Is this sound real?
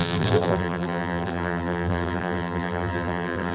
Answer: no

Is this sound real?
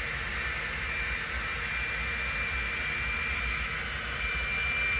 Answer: yes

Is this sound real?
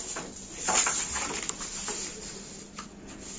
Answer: yes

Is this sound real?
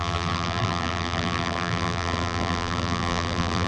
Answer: no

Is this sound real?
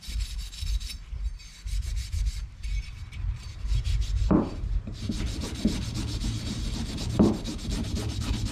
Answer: no